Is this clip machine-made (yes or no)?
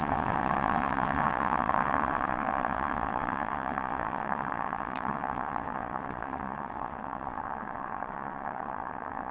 yes